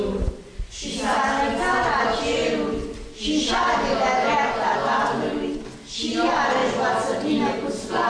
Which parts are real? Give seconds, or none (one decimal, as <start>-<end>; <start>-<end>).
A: 0.0-8.1